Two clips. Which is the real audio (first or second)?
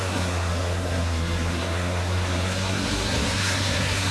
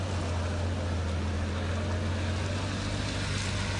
second